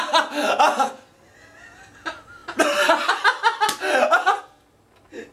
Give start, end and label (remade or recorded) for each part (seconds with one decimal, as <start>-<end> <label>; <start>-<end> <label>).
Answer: 0.0-2.4 recorded; 2.4-3.1 remade; 3.1-5.3 recorded